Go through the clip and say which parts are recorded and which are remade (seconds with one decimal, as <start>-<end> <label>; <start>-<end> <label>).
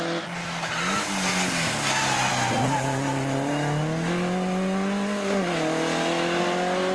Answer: 0.0-6.9 recorded